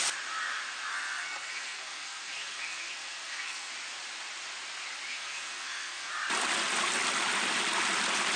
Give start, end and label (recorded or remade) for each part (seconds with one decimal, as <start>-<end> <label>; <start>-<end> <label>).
0.0-0.9 recorded; 0.9-3.7 remade; 3.7-5.1 recorded; 5.1-6.1 remade; 6.1-8.4 recorded